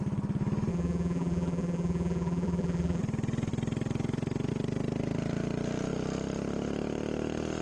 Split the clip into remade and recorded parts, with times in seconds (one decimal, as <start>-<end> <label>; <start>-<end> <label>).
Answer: 0.0-0.7 recorded; 0.7-3.0 remade; 3.0-7.6 recorded